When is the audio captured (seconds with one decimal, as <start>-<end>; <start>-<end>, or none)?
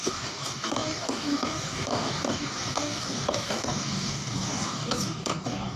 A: none